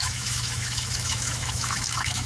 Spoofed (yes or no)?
yes